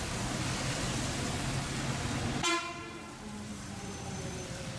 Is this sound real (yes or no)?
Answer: yes